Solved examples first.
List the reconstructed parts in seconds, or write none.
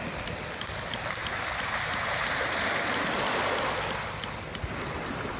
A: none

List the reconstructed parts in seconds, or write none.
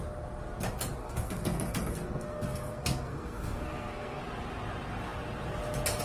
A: 1.0-4.2 (codec, SNAC)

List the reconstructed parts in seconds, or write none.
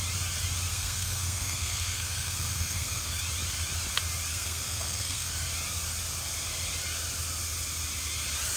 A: 0.7-3.2 (codec, SNAC); 4.3-5.3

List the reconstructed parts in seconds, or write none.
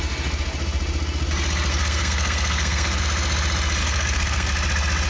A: 1.7-3.0 (codec, SNAC); 3.8-4.5